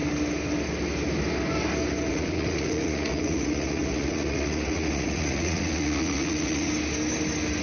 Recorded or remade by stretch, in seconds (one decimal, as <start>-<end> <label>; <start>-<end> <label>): 0.0-2.1 recorded; 2.1-6.7 remade; 6.7-7.6 recorded